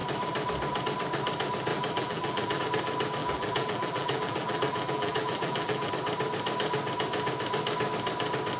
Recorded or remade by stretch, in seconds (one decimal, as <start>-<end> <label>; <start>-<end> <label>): 0.0-1.7 recorded; 1.7-2.6 remade; 2.6-3.2 recorded; 3.2-5.9 remade; 5.9-8.6 recorded